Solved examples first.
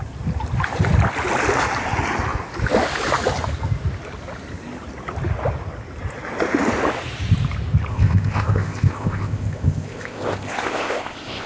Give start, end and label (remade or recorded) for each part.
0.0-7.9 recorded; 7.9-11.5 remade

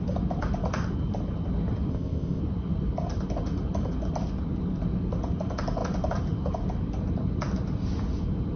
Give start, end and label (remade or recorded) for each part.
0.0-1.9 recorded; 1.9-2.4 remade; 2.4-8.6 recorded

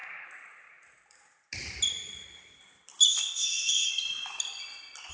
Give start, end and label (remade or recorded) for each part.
0.0-3.1 recorded; 3.1-3.9 remade; 3.9-5.1 recorded

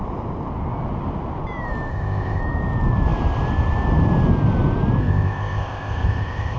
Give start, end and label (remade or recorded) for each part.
0.0-1.9 recorded; 1.9-2.4 remade; 2.4-5.0 recorded; 5.0-6.6 remade

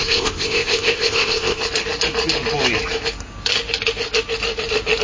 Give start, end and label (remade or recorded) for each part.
0.0-1.6 remade; 1.6-5.0 recorded

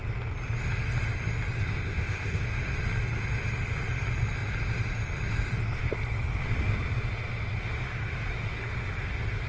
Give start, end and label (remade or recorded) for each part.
0.0-1.6 recorded; 1.6-2.4 remade; 2.4-9.5 recorded

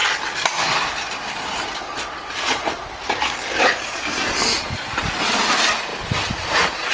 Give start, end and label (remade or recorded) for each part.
0.0-6.9 recorded

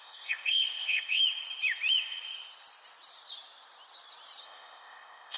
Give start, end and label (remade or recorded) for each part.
0.0-1.2 remade; 1.2-4.4 recorded; 4.4-5.4 remade